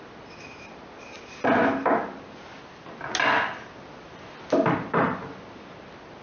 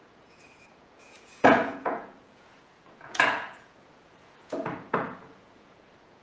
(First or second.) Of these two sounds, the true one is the first